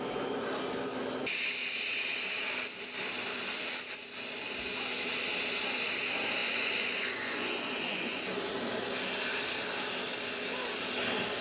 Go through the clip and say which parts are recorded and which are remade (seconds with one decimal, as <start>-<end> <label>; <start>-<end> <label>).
0.0-6.4 recorded; 6.4-8.2 remade; 8.2-11.4 recorded